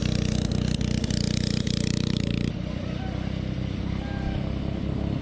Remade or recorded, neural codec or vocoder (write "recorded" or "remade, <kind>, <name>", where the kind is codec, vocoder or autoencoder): recorded